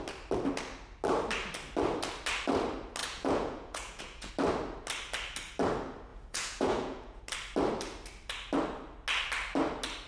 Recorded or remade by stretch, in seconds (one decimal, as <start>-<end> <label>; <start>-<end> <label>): 0.0-3.0 recorded; 3.0-4.3 remade; 4.3-6.1 recorded; 6.1-7.2 remade; 7.2-10.1 recorded